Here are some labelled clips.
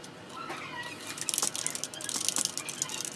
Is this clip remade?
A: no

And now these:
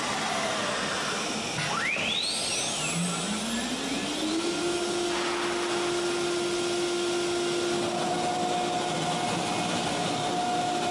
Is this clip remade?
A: no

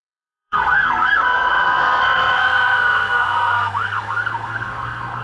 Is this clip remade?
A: yes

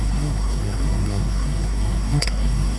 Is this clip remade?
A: yes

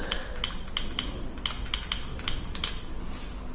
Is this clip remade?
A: no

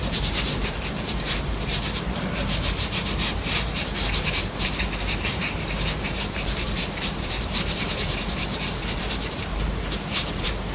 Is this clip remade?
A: yes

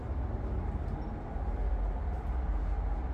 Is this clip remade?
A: no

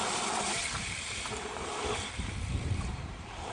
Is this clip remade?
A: yes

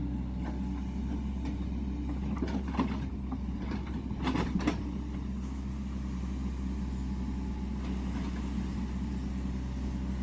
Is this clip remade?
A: no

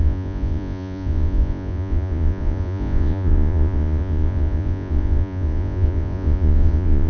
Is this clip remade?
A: yes